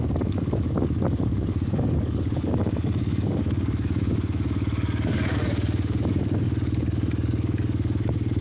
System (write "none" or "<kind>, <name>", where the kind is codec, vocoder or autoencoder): codec, DAC